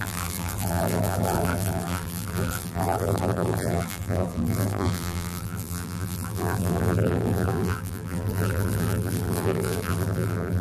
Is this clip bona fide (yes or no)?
no